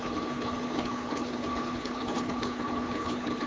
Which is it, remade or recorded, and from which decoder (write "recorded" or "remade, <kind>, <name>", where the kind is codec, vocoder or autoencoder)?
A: remade, codec, HILCodec